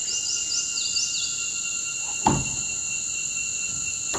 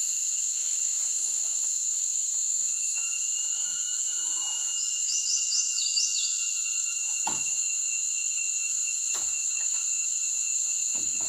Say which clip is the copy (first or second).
second